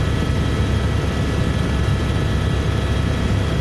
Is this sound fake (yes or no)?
no